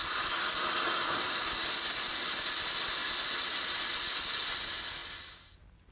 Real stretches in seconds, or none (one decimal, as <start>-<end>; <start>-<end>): 0.0-5.9